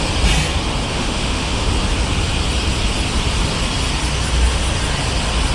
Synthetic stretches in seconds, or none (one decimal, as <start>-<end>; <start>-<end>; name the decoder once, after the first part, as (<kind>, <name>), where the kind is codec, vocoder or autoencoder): 0.9-1.7 (autoencoder, DAC-VAE)